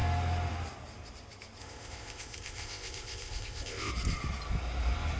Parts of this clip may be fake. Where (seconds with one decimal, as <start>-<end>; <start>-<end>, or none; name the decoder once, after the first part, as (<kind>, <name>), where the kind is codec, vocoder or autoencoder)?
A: 1.6-3.9 (codec, ZipCodec)